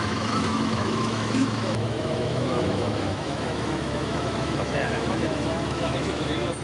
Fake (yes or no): yes